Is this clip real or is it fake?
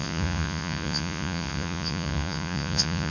fake